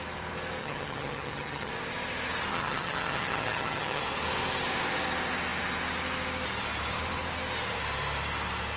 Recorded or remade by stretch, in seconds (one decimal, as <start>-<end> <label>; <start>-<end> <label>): 0.0-0.6 recorded; 0.6-1.7 remade; 1.7-2.5 recorded; 2.5-4.0 remade; 4.0-8.8 recorded